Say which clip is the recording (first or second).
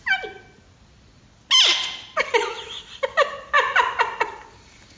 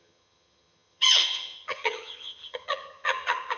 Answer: first